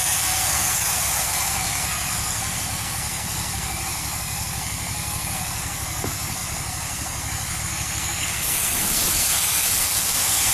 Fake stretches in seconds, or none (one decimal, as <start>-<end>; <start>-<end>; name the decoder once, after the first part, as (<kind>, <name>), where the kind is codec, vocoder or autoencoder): 0.0-10.5 (codec, SNAC)

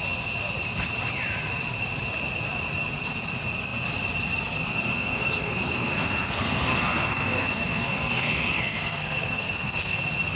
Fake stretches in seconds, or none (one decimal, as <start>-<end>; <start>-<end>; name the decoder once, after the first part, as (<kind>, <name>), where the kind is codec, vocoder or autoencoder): 4.9-10.0 (codec, SNAC)